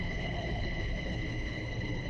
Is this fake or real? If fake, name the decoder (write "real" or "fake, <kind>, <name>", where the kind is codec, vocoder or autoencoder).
fake, codec, HILCodec